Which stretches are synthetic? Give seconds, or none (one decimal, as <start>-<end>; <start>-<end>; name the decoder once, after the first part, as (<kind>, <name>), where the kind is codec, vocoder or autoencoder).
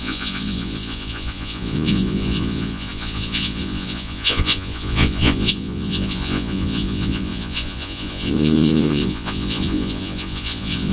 0.0-10.9 (vocoder, Vocos)